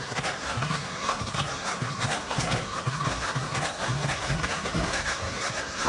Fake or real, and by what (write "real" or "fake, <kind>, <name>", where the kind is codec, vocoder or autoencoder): fake, codec, SNAC